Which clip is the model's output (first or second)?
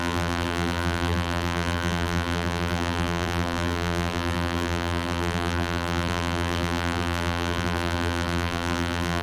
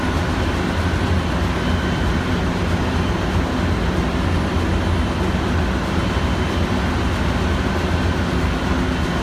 first